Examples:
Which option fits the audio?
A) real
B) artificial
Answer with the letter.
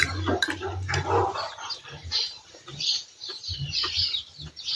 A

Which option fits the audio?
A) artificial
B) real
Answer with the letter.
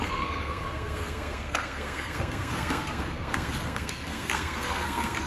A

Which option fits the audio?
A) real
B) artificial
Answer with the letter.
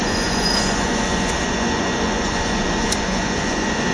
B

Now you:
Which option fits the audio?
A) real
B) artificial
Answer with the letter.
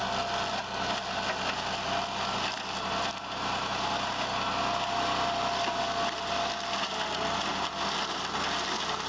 A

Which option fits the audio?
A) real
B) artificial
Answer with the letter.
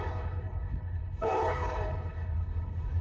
B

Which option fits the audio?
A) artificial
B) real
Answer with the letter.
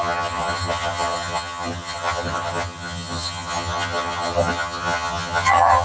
A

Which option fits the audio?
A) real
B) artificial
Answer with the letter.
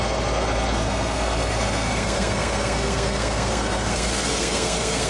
B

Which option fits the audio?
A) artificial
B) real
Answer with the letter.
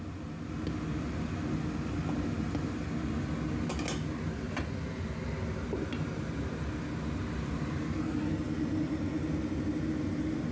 B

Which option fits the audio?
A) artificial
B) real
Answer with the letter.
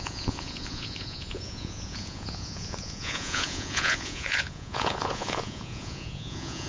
A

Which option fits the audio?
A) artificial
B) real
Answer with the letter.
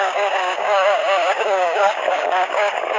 A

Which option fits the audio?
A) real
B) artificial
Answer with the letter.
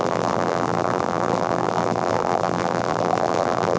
B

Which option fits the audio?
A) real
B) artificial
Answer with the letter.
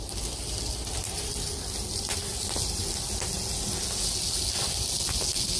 A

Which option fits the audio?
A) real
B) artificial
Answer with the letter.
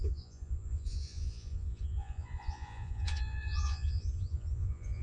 B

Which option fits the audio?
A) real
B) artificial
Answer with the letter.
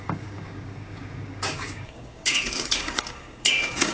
B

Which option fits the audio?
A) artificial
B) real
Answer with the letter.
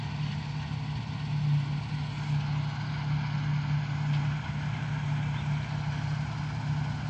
B